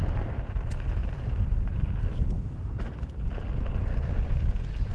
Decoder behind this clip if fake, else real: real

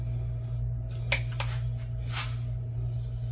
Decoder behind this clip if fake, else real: real